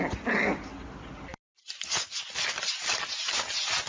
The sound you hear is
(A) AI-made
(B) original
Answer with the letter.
B